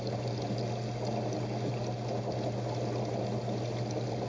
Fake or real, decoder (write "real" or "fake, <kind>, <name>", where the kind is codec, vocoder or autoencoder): real